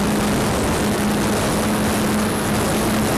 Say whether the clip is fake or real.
real